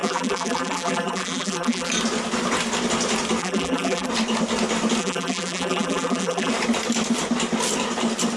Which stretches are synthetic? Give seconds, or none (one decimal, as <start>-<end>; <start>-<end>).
0.0-1.9; 3.4-4.1; 5.0-6.5